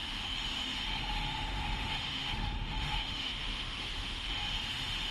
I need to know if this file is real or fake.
fake